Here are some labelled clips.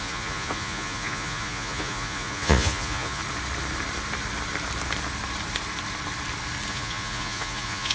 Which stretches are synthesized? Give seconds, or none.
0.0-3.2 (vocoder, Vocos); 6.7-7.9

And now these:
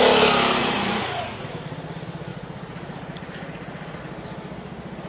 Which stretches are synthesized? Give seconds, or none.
0.6-1.3 (vocoder, Vocos); 2.3-4.0

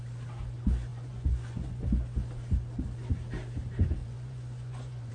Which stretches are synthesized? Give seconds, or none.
0.9-1.8 (vocoder, Vocos); 4.0-5.1

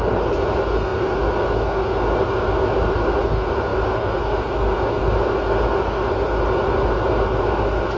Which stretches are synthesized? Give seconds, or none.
none

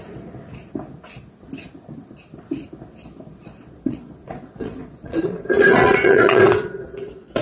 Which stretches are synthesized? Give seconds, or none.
3.4-7.4 (vocoder, Vocos)

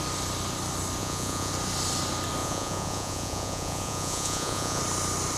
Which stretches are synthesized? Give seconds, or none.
1.0-1.5 (vocoder, Vocos); 2.4-4.8